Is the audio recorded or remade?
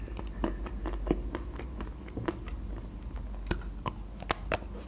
recorded